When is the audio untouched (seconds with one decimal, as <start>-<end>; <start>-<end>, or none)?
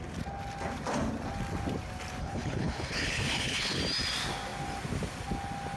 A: 0.0-2.2; 3.8-5.8